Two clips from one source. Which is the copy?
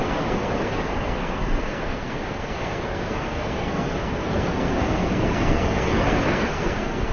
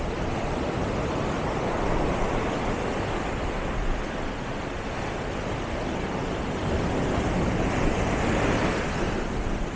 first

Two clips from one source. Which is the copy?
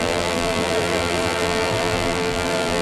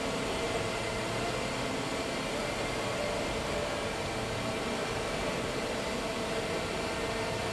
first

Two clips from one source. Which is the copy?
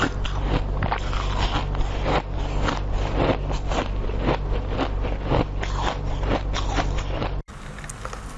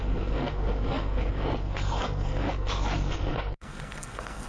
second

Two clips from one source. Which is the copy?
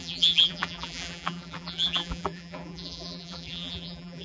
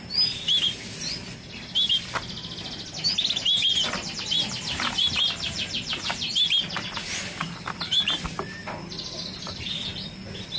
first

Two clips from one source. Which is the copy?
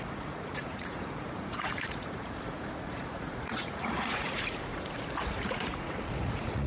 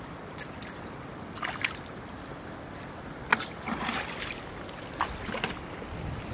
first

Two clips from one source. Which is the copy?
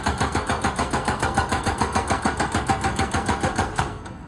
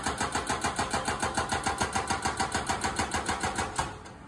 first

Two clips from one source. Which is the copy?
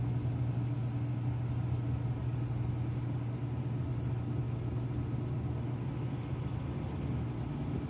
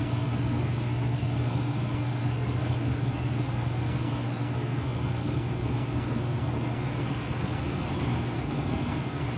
second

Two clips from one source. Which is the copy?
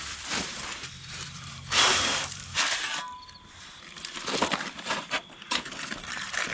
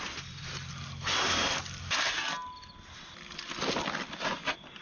first